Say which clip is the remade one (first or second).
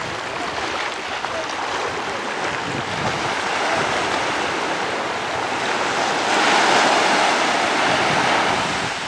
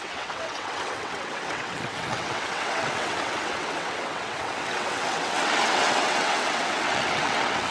second